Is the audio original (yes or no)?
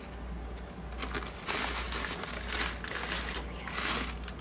yes